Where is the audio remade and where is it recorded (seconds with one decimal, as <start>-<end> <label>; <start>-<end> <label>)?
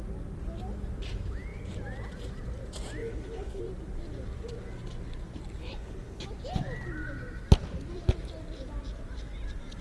0.0-3.0 recorded; 3.0-3.6 remade; 3.6-5.6 recorded; 5.6-6.2 remade; 6.2-9.8 recorded